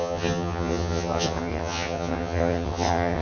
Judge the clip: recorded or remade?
remade